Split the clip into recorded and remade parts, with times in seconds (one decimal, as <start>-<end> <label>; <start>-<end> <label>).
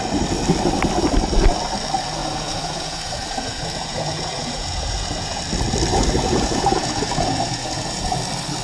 0.0-2.2 recorded; 2.2-5.4 remade; 5.4-5.9 recorded; 5.9-8.2 remade; 8.2-8.6 recorded